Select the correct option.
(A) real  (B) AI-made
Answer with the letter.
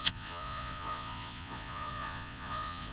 B